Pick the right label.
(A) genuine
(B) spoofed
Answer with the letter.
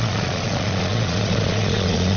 B